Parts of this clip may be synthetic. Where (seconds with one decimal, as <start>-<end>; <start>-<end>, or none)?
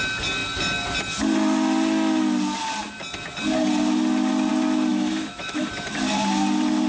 4.9-5.7